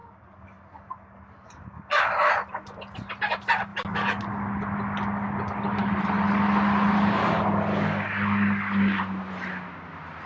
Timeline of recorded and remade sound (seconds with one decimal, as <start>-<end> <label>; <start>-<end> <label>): 0.0-2.3 remade; 2.3-3.7 recorded; 3.7-4.2 remade; 4.2-7.7 recorded; 7.7-9.0 remade; 9.0-10.3 recorded